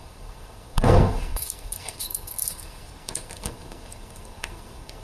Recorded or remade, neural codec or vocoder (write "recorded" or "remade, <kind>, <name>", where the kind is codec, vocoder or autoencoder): remade, codec, SNAC